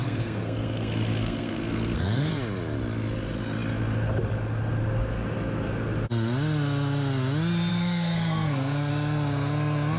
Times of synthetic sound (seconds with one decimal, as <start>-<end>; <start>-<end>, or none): 0.0-2.3; 7.7-8.9